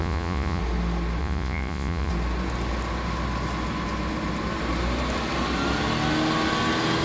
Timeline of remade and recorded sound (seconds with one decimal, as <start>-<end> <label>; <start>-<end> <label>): 0.0-0.6 remade; 0.6-1.2 recorded; 1.2-2.1 remade; 2.1-7.0 recorded